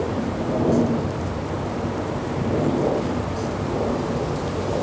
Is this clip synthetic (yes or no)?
yes